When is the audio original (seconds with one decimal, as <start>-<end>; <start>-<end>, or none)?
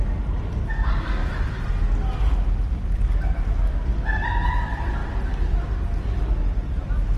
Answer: 0.0-7.2